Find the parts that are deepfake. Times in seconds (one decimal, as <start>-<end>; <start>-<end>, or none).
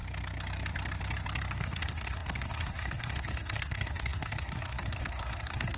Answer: 1.5-5.8